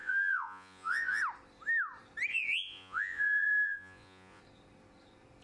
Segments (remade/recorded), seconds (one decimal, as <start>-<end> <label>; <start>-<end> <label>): 0.0-1.2 remade; 1.2-2.3 recorded; 2.3-4.4 remade; 4.4-5.4 recorded

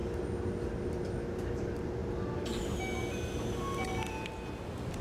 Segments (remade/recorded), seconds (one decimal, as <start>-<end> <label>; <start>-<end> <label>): 0.0-5.0 recorded